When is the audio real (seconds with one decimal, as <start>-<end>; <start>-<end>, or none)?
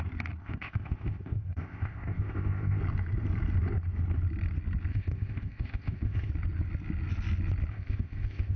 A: 0.0-0.4; 2.8-4.9; 6.3-7.7